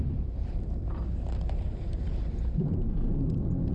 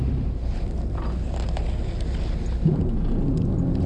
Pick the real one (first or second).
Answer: second